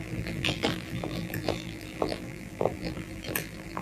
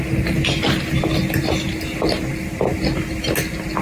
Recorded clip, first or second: second